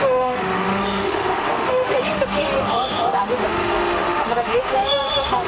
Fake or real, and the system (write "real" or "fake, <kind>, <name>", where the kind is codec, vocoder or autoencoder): fake, autoencoder, DAC-VAE